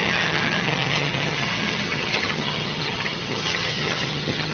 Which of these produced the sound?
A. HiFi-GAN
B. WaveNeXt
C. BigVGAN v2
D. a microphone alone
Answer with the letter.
A